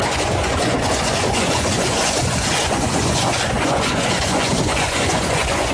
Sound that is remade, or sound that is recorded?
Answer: remade